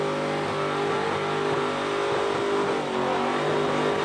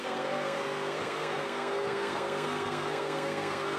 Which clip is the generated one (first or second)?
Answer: second